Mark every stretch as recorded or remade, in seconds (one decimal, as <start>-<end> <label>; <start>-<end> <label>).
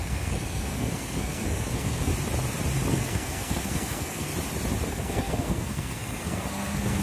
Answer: 0.0-2.1 remade; 2.1-2.9 recorded; 2.9-4.3 remade; 4.3-4.9 recorded; 4.9-7.0 remade